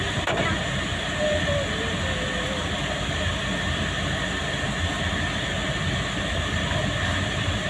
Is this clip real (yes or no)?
yes